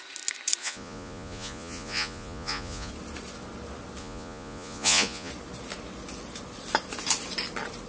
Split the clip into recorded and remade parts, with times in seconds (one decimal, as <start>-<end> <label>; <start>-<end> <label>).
0.0-0.6 recorded; 0.6-2.9 remade; 2.9-4.0 recorded; 4.0-5.3 remade; 5.3-7.9 recorded